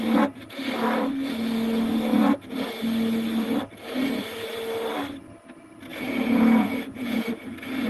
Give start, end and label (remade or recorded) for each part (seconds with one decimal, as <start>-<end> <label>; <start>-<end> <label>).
0.0-2.1 recorded; 2.1-2.7 remade; 2.7-5.9 recorded; 5.9-7.3 remade; 7.3-7.9 recorded